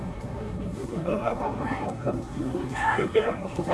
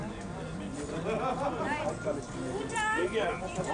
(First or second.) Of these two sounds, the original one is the second